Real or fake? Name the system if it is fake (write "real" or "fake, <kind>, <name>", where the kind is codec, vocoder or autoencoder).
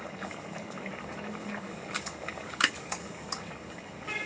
fake, codec, DAC